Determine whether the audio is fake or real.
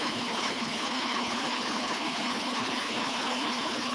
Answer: fake